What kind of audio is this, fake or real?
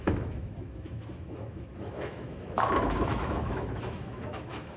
fake